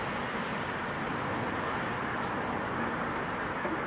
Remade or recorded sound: recorded